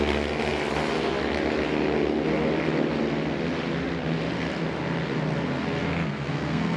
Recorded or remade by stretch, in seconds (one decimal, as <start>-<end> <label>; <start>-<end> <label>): 0.0-5.8 recorded; 5.8-6.8 remade